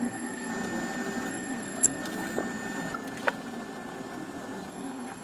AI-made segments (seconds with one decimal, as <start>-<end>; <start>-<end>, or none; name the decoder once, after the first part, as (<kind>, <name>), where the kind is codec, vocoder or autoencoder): 0.0-0.5 (codec, SNAC); 1.3-2.0; 4.7-5.2